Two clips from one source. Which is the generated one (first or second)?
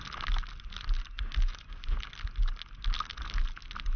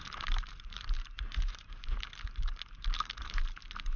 second